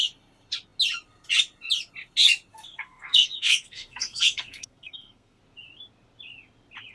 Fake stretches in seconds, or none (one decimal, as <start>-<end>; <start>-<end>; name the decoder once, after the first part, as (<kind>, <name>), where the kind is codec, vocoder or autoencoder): 2.5-5.4 (codec, SNAC)